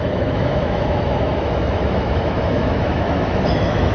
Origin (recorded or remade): remade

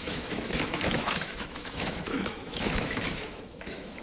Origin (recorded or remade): remade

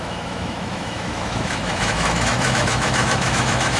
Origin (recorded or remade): remade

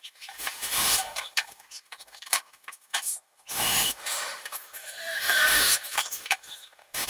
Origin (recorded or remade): remade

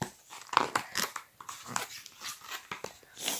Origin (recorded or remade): recorded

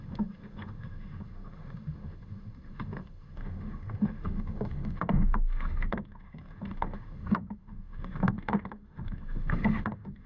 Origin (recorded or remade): remade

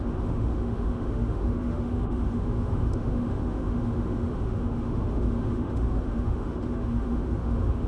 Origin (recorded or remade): remade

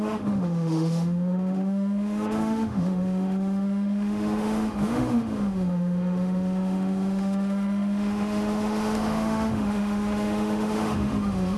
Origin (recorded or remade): remade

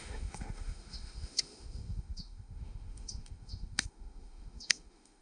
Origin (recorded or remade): remade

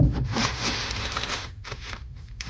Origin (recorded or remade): remade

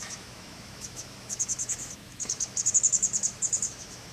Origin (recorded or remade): remade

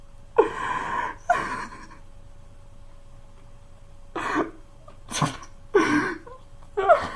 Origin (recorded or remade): recorded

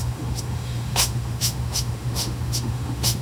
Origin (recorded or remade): remade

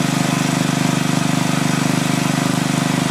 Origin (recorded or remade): recorded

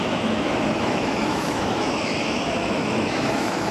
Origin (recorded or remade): remade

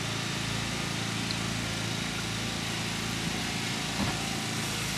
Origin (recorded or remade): recorded